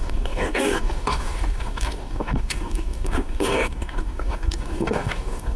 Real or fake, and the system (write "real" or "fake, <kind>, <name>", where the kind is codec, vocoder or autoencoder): fake, codec, DAC